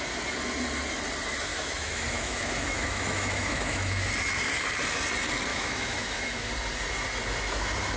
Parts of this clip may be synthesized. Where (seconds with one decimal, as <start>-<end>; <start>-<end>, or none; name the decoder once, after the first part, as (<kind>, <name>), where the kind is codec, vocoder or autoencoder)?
1.5-4.1 (autoencoder, DAC-VAE); 5.5-6.5